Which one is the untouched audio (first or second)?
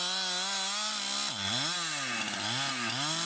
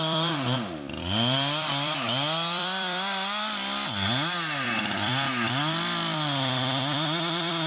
first